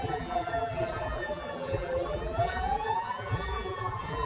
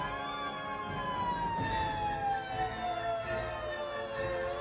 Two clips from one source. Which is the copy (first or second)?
first